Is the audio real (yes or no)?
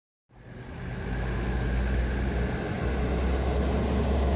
yes